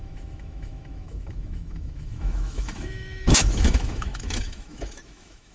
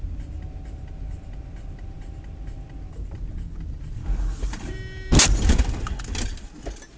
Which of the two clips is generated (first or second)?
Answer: first